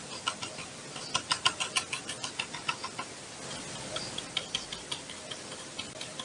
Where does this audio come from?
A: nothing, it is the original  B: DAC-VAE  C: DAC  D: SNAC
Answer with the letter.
A